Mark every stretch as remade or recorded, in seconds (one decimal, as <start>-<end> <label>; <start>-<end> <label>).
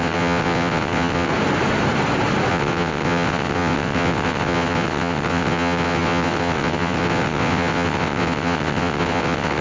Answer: 0.0-1.3 remade; 1.3-2.5 recorded; 2.5-9.6 remade